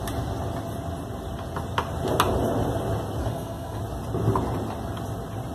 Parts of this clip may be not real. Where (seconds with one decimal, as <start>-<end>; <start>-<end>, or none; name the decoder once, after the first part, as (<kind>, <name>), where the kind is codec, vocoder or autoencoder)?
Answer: 3.2-3.8 (codec, SNAC)